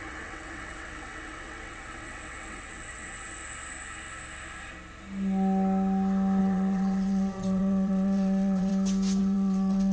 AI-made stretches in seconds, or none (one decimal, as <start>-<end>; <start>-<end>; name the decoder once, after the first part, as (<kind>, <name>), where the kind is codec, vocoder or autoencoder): 0.0-3.4 (vocoder, WaveNeXt); 6.4-8.7; 9.2-9.9